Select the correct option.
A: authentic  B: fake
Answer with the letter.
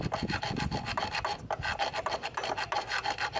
A